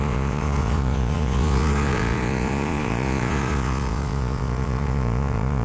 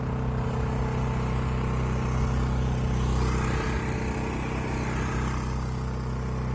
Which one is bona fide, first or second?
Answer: second